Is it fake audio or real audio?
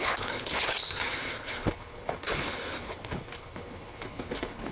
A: fake